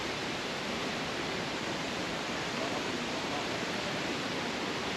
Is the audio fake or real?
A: fake